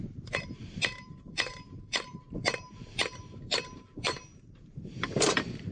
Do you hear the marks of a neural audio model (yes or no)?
yes